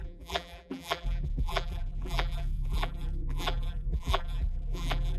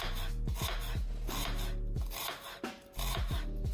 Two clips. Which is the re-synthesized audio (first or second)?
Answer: first